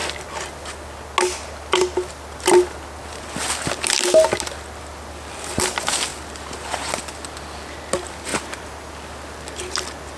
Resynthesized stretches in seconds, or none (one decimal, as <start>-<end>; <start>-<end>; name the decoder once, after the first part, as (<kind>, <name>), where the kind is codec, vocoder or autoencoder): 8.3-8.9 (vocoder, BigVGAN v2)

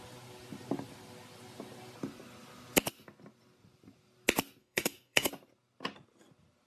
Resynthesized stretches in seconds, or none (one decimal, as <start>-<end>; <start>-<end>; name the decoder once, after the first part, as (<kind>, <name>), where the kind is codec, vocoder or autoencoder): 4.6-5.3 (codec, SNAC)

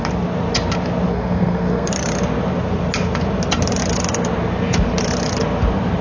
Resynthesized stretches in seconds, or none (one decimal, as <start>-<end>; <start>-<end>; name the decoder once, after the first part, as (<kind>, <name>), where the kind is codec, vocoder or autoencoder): 1.1-1.9 (codec, SNAC)